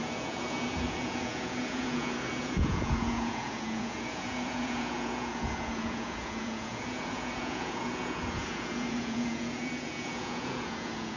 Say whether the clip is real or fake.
fake